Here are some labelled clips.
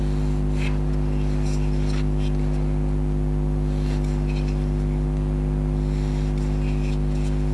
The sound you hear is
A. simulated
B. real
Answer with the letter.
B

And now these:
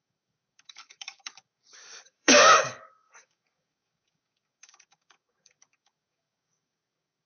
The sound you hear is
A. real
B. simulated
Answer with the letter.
B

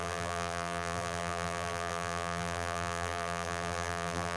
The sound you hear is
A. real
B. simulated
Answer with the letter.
B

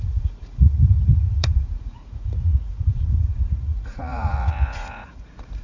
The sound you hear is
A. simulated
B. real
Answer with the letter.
A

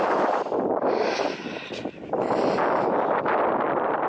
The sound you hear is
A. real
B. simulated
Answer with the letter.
A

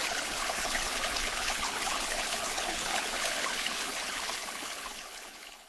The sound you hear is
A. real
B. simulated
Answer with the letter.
B